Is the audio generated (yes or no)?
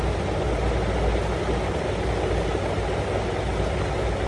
no